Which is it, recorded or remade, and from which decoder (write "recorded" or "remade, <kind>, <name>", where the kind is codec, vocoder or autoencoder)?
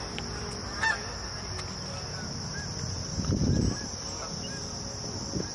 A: recorded